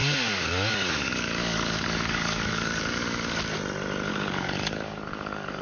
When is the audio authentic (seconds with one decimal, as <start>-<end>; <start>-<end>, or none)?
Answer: 3.4-4.1